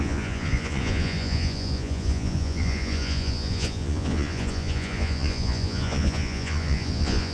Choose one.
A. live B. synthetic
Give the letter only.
B